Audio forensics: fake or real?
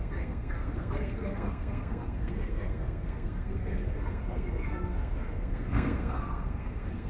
fake